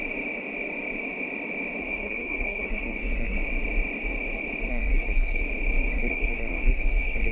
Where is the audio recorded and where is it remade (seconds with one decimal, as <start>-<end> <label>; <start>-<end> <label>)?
0.0-1.8 recorded; 1.8-3.4 remade; 3.4-4.7 recorded; 4.7-5.4 remade; 5.4-5.9 recorded; 5.9-7.3 remade